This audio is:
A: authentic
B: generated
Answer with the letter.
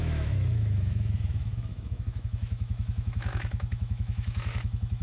B